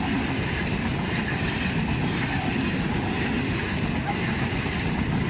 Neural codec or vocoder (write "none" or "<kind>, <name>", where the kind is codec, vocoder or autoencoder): none